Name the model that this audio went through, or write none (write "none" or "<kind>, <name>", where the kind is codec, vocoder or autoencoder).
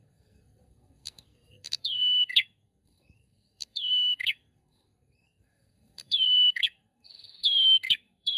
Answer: codec, SNAC